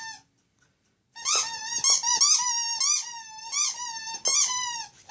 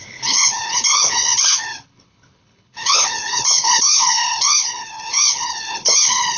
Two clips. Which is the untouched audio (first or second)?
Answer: first